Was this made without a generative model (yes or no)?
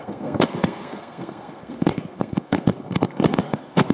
no